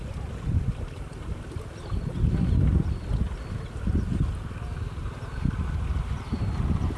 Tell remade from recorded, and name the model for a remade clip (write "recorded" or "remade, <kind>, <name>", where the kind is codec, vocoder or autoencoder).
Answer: recorded